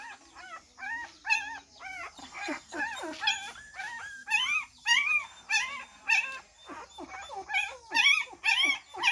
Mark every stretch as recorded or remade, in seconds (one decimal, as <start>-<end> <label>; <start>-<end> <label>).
0.0-2.2 recorded; 2.2-2.8 remade; 2.8-9.1 recorded

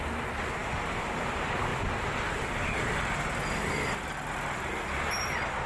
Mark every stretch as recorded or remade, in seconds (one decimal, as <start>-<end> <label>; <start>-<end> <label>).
0.0-5.7 recorded

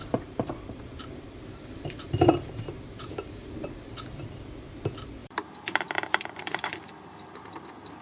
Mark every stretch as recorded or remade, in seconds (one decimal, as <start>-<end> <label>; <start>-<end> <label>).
0.0-3.5 remade; 3.5-5.2 recorded; 5.2-6.9 remade; 6.9-8.0 recorded

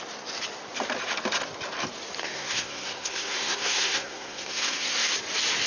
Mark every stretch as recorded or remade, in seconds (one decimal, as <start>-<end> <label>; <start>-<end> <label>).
0.0-2.2 recorded; 2.2-5.1 remade; 5.1-5.7 recorded